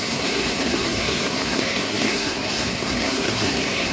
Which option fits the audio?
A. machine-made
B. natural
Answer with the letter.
A